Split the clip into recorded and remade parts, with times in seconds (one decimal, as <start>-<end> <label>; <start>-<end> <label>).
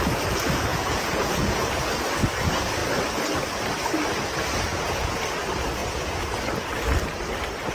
0.0-0.7 recorded; 0.7-1.7 remade; 1.7-4.7 recorded; 4.7-5.2 remade; 5.2-5.8 recorded; 5.8-6.4 remade; 6.4-7.7 recorded